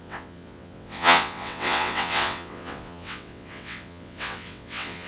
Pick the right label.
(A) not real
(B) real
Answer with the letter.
A